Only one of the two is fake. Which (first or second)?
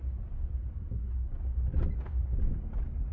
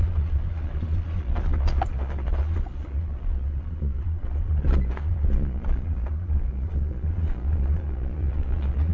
second